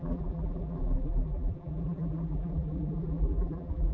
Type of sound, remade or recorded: remade